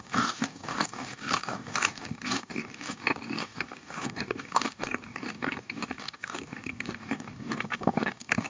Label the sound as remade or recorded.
remade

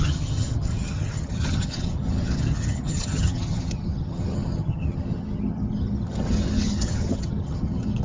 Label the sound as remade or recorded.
remade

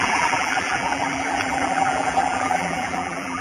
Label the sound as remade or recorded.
remade